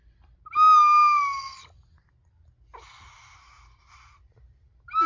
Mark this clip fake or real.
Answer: real